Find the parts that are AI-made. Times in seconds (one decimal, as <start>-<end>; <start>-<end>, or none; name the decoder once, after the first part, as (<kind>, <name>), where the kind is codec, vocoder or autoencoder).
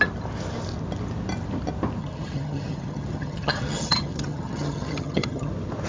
2.0-5.5 (vocoder, HiFi-GAN)